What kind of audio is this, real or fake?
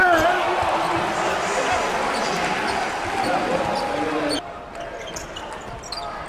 real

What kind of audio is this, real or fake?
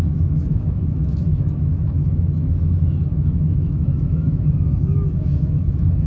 fake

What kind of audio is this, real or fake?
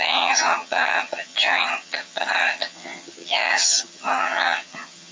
fake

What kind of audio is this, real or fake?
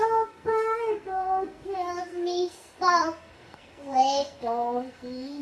fake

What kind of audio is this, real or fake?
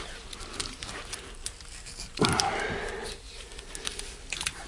real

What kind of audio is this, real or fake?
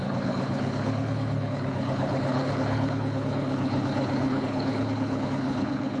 fake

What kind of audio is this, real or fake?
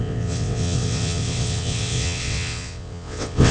fake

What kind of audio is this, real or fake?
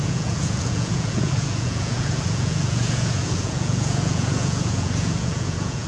fake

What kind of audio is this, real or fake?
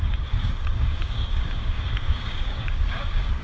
fake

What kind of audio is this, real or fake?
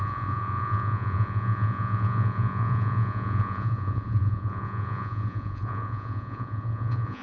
fake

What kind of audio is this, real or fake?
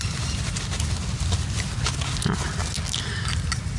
real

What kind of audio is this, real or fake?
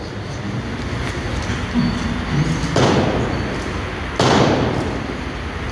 real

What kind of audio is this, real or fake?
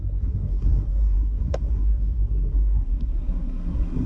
fake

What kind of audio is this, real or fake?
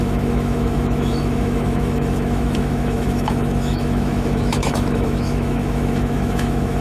fake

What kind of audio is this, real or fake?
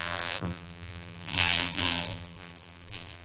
fake